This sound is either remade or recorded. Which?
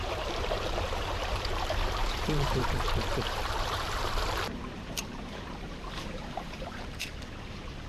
remade